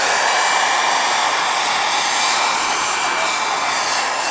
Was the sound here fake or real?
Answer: real